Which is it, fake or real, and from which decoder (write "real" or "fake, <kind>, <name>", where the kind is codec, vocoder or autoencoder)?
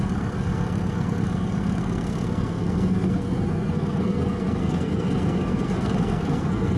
fake, codec, SNAC